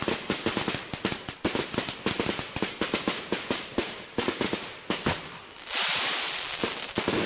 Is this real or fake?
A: real